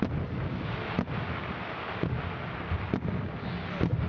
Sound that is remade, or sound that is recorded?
recorded